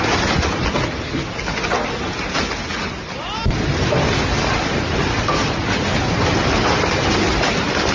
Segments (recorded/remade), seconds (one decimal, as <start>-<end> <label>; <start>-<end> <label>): 0.0-7.9 recorded